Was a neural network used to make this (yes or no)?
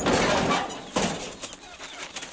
no